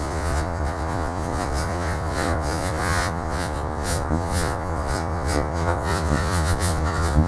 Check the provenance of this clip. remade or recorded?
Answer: remade